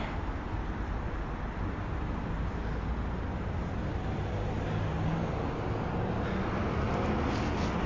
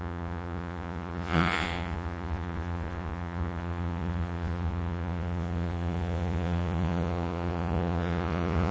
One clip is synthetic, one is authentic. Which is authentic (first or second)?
first